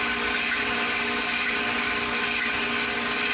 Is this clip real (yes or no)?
yes